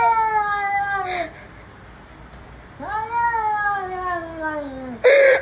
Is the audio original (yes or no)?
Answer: yes